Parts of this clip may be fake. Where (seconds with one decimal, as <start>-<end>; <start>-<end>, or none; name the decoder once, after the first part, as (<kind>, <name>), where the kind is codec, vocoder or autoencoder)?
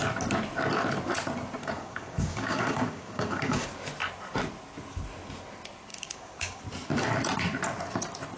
1.6-3.7 (codec, DAC); 5.9-6.6